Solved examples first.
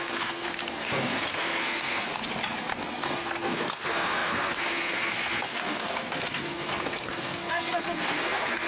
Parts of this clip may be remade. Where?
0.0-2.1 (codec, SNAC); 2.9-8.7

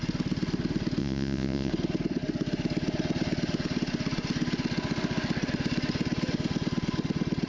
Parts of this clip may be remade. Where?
1.0-1.7 (vocoder, Vocos)

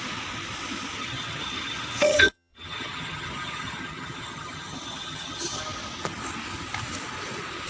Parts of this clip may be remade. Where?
1.0-5.6 (vocoder, HiFi-GAN)

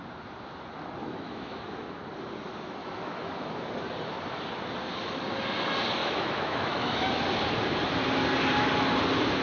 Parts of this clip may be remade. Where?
1.0-2.0 (autoencoder, DAC-VAE); 2.8-3.7; 6.0-7.1

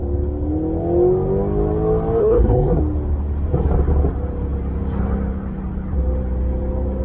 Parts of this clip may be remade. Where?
2.2-2.8 (codec, SNAC)

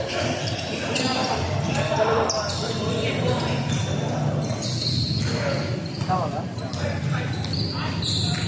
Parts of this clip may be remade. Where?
none